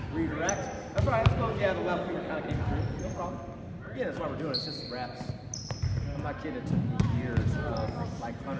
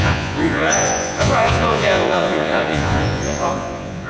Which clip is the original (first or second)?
first